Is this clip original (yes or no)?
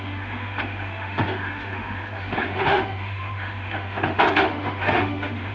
no